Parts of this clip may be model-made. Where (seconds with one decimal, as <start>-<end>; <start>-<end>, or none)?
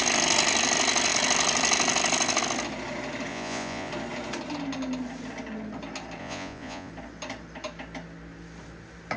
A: 3.3-3.9; 6.2-6.9